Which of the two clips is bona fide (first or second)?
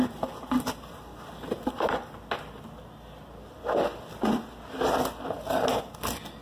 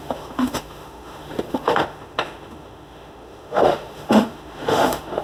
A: first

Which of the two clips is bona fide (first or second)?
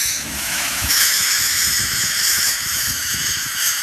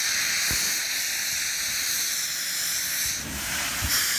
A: second